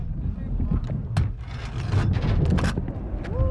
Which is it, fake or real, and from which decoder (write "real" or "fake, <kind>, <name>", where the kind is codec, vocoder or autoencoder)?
real